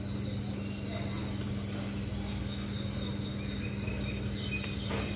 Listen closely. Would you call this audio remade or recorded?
recorded